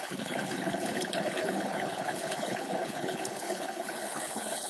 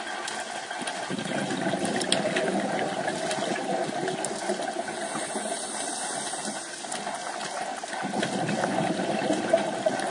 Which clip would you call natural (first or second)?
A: second